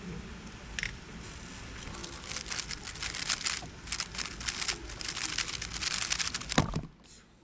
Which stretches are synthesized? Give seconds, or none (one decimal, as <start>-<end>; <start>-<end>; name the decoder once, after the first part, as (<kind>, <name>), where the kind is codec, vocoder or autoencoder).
none